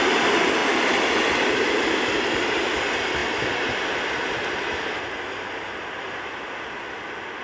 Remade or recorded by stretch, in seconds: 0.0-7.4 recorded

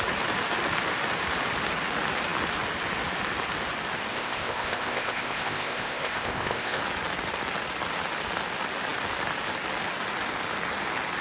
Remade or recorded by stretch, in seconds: 0.0-4.1 recorded; 4.1-6.8 remade; 6.8-11.2 recorded

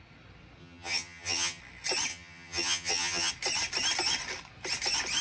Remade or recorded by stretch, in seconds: 0.0-0.6 recorded; 0.6-1.6 remade; 1.6-2.1 recorded; 2.1-3.3 remade; 3.3-5.2 recorded

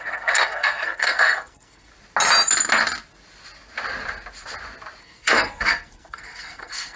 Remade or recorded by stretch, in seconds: 0.0-1.9 remade; 1.9-5.0 recorded; 5.0-7.0 remade

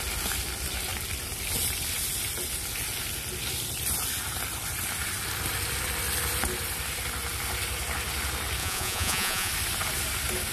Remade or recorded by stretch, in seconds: 0.0-8.6 recorded; 8.6-9.5 remade; 9.5-10.5 recorded

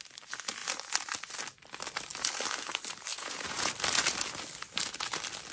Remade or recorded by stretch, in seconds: 0.0-3.1 recorded; 3.1-3.7 remade; 3.7-5.5 recorded

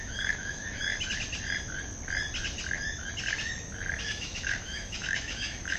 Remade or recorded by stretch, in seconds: 0.0-0.9 remade; 0.9-4.0 recorded; 4.0-5.8 remade

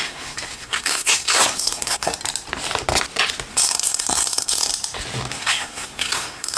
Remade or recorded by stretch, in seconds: 0.0-2.1 remade; 2.1-3.5 recorded; 3.5-4.7 remade; 4.7-5.3 recorded; 5.3-6.6 remade